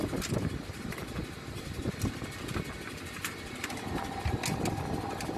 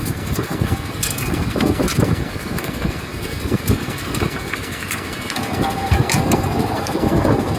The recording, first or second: first